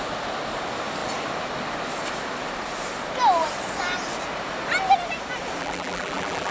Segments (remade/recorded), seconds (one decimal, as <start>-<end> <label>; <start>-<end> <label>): 0.0-5.6 recorded; 5.6-6.5 remade